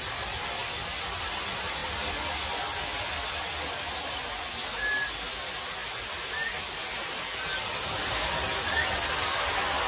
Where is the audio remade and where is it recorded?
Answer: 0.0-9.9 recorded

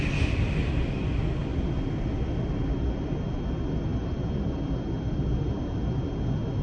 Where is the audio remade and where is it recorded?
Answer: 0.0-6.6 recorded

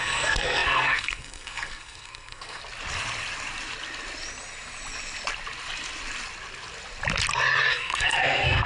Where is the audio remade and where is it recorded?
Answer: 0.0-2.6 remade; 2.6-7.7 recorded; 7.7-8.7 remade

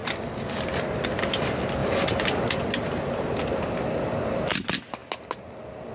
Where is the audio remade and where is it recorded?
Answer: 0.0-5.9 recorded

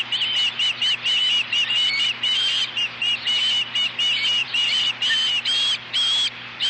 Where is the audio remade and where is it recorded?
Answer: 0.0-1.2 recorded; 1.2-3.4 remade; 3.4-4.4 recorded; 4.4-4.9 remade; 4.9-6.7 recorded

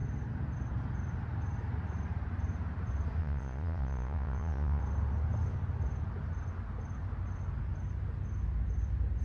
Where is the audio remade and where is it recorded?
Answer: 0.0-3.2 recorded; 3.2-4.8 remade; 4.8-9.2 recorded

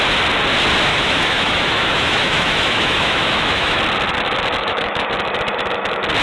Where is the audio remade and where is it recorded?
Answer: 0.0-0.9 recorded; 0.9-3.8 remade; 3.8-4.6 recorded; 4.6-5.1 remade; 5.1-6.2 recorded